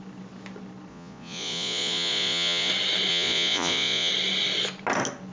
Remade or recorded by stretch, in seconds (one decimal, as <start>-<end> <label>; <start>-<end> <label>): 0.0-0.9 recorded; 0.9-2.7 remade; 2.7-3.1 recorded; 3.1-4.1 remade; 4.1-5.3 recorded